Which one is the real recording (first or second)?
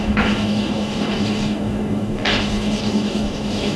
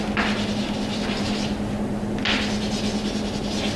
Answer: second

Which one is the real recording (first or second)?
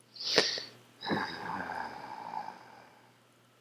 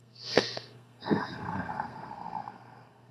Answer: first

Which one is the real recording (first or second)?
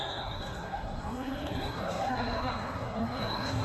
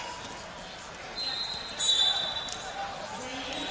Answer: second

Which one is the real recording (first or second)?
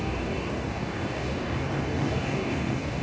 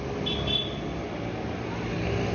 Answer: second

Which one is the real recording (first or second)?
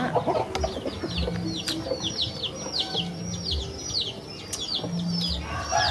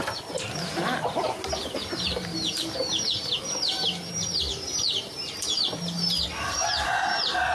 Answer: first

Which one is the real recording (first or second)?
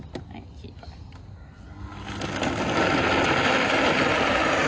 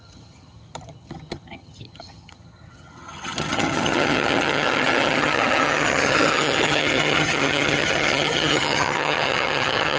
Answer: first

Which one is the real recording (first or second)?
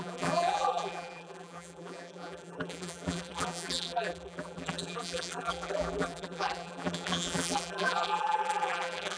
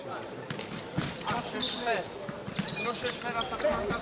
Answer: second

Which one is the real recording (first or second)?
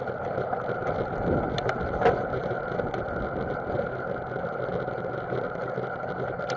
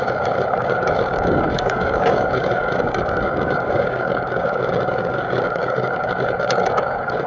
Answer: first